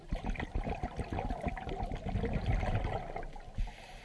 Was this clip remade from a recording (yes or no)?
no